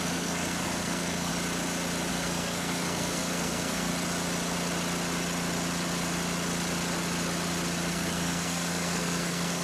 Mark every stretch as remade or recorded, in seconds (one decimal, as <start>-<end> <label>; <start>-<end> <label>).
0.0-1.3 remade; 1.3-2.1 recorded; 2.1-3.9 remade; 3.9-7.9 recorded; 7.9-9.6 remade